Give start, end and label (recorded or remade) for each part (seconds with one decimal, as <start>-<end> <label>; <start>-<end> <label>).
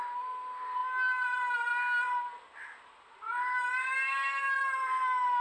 0.0-5.4 recorded